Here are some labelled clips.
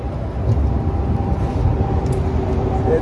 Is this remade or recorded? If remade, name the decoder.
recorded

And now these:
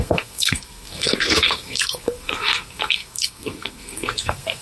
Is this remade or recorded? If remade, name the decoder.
remade, codec, SNAC